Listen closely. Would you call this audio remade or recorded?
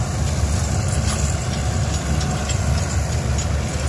recorded